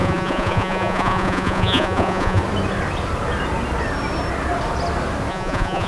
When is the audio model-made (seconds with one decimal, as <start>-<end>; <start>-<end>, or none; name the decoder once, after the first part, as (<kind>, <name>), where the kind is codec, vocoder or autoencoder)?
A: 0.0-2.4 (vocoder, Vocos); 5.3-5.9